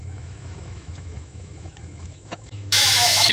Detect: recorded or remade remade